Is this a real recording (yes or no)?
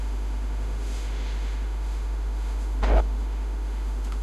no